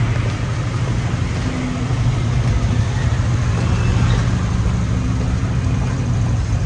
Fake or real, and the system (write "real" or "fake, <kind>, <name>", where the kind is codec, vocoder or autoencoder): real